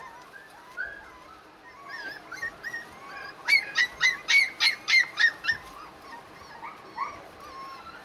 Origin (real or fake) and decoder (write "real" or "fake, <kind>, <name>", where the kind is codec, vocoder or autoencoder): fake, vocoder, BigVGAN v2